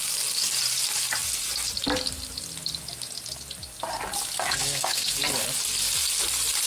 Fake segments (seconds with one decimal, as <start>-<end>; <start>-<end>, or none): 4.6-5.2